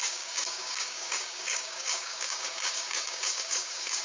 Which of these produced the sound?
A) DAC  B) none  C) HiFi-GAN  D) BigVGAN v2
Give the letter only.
A